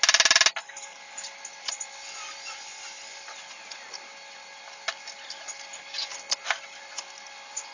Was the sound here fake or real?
real